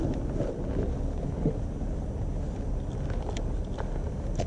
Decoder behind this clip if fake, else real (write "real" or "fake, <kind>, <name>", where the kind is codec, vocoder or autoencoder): real